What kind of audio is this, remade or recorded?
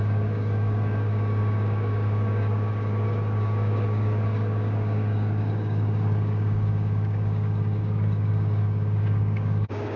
remade